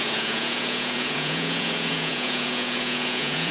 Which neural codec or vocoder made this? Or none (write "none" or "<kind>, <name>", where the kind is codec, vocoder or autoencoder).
vocoder, Vocos